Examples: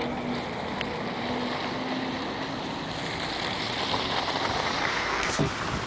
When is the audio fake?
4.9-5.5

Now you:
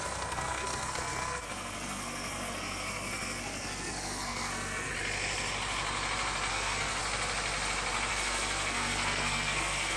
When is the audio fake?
0.0-4.9; 6.5-7.0; 8.1-10.0